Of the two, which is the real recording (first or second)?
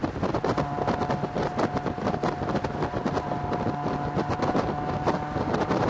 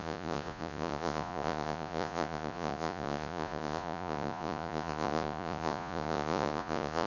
first